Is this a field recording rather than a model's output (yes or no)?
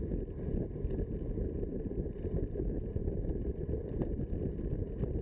yes